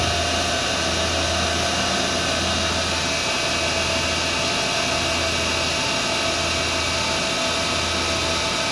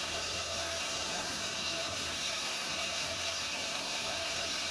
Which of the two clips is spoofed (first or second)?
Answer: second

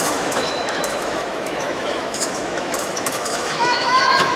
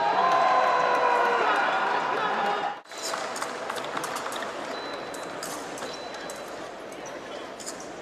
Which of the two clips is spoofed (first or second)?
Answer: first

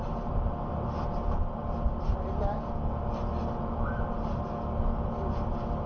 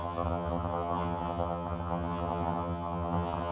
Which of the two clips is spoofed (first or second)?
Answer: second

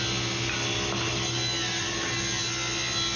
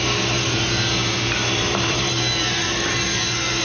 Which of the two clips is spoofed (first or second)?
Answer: second